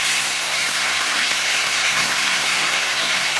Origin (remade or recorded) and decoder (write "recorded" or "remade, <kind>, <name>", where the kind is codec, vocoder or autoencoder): remade, codec, SNAC